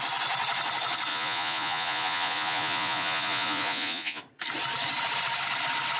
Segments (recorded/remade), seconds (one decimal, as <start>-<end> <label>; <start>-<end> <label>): 0.0-1.1 recorded; 1.1-4.2 remade; 4.2-6.0 recorded